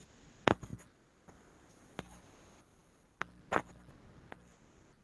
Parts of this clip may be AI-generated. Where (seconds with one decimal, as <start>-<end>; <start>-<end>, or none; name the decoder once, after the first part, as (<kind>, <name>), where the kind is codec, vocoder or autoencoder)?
none